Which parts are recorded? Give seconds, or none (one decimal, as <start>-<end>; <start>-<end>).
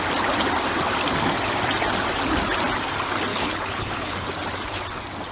0.0-3.3; 4.3-5.3